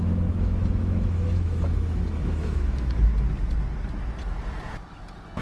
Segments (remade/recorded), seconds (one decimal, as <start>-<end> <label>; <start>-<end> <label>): 0.0-3.1 remade; 3.1-5.4 recorded